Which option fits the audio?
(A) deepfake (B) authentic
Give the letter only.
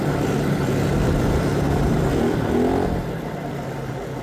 A